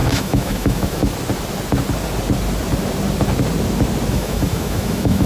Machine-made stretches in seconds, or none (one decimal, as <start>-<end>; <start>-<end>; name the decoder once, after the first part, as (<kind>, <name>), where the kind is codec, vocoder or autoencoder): 0.0-1.0 (autoencoder, DAC-VAE); 4.1-5.3